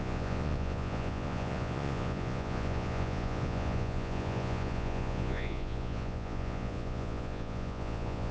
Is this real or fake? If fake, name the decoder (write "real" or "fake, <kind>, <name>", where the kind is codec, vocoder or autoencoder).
fake, vocoder, Vocos